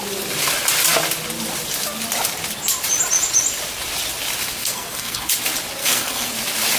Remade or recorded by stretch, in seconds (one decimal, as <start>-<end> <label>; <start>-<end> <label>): 0.0-4.6 recorded; 4.6-5.3 remade; 5.3-5.8 recorded; 5.8-6.3 remade; 6.3-6.8 recorded